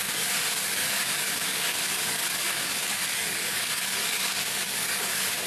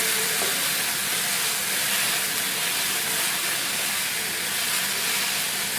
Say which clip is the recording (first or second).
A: second